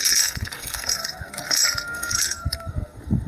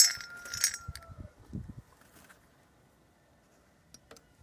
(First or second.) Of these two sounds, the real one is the second